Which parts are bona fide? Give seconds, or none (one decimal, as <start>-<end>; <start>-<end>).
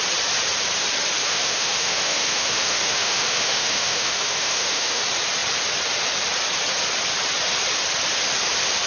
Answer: 0.0-1.2; 5.0-8.9